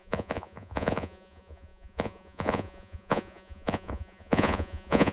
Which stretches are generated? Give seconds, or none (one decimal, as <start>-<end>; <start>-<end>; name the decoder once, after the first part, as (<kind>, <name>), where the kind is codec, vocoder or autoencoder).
0.0-5.1 (vocoder, Vocos)